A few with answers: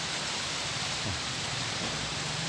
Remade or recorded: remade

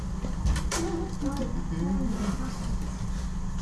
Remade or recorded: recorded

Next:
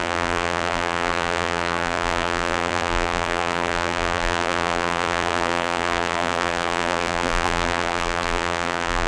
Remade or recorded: remade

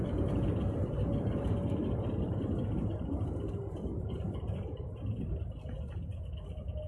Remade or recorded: remade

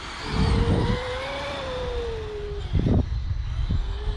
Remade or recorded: recorded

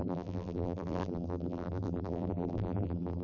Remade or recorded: remade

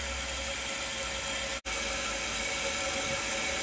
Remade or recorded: recorded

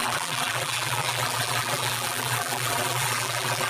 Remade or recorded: remade